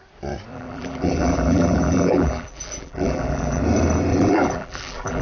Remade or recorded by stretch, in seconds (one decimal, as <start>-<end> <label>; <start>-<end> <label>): 0.0-0.5 recorded; 0.5-3.6 remade; 3.6-4.1 recorded; 4.1-5.2 remade